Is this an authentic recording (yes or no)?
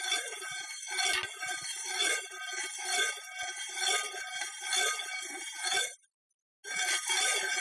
yes